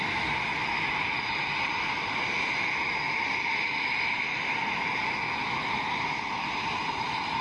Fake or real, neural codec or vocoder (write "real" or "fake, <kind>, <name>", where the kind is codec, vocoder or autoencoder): real